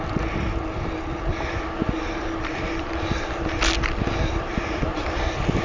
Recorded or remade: recorded